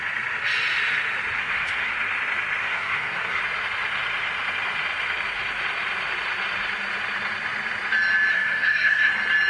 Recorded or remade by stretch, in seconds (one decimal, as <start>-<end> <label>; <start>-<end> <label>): 0.0-1.4 recorded; 1.4-1.9 remade; 1.9-2.6 recorded; 2.6-3.4 remade; 3.4-8.3 recorded; 8.3-9.1 remade; 9.1-9.5 recorded